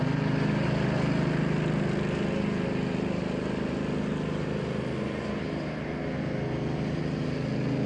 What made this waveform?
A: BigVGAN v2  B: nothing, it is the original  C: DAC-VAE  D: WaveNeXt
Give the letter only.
B